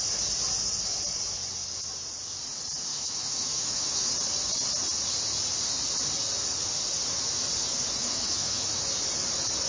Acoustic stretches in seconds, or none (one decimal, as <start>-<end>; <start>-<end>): 0.0-2.9; 4.1-8.0; 8.8-9.7